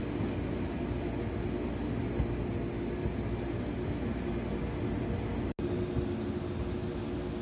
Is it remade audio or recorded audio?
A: recorded